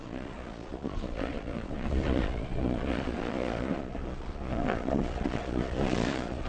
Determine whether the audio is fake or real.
fake